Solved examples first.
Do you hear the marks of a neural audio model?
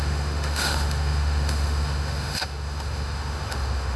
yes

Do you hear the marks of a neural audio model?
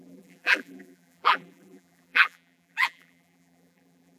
yes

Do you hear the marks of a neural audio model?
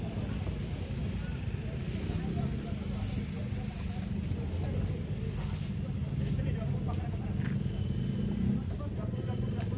no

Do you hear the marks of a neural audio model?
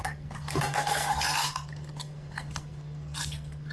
yes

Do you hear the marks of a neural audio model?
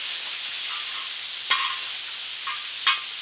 no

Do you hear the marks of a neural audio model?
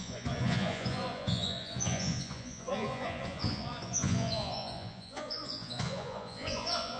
yes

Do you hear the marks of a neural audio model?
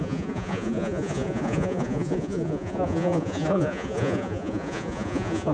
yes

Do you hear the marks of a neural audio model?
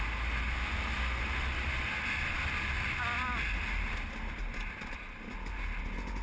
no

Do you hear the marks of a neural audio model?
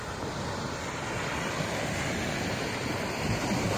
no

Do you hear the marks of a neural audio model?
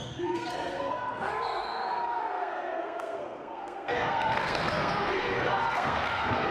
yes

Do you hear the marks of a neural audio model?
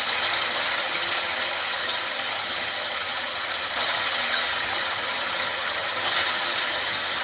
yes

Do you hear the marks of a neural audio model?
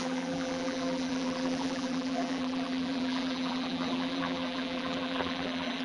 yes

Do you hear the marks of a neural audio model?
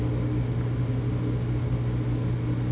no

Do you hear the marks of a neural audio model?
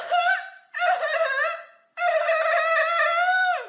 no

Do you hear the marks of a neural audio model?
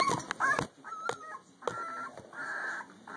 no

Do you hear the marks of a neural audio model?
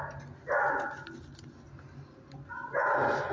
no